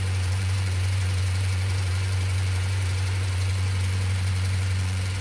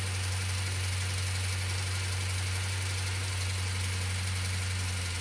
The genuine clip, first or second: second